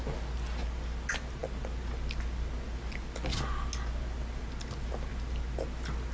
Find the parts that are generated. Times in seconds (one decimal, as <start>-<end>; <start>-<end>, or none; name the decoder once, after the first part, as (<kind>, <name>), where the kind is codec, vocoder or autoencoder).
none